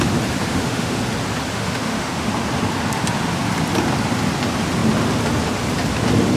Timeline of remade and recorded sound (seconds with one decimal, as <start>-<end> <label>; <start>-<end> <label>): 0.0-0.4 recorded; 0.4-1.0 remade; 1.0-1.5 recorded; 1.5-2.3 remade; 2.3-6.4 recorded